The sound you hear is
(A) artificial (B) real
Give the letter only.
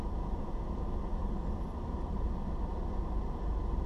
B